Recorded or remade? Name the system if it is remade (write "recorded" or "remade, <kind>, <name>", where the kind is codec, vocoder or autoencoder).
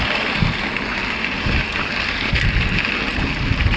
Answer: recorded